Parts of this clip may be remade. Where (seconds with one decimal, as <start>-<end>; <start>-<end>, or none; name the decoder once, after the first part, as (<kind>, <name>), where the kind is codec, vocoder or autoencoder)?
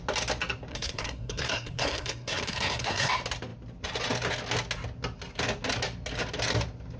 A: 0.7-3.1 (codec, SNAC)